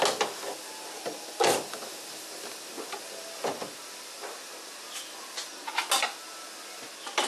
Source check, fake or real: real